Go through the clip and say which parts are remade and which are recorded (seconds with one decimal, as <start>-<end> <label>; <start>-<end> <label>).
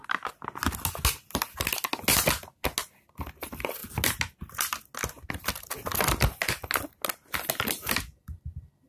0.0-8.9 recorded